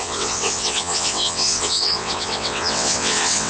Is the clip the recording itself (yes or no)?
no